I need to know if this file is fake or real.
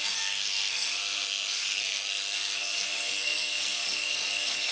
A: fake